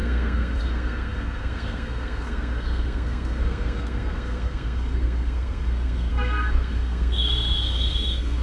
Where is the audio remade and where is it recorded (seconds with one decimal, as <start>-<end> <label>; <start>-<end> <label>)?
0.0-8.4 remade